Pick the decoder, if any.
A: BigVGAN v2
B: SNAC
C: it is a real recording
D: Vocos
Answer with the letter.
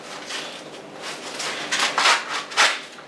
C